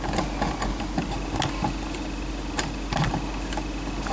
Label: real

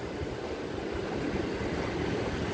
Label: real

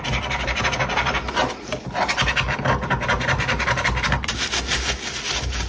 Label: real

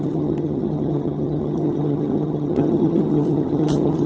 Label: fake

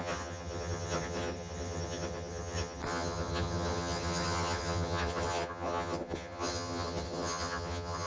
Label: fake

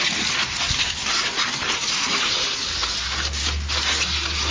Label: real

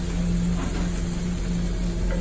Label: real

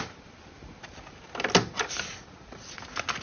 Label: real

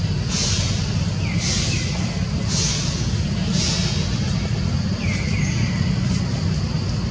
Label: real